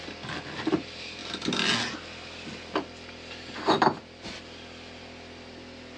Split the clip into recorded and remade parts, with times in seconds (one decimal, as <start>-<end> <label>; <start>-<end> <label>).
0.0-6.0 recorded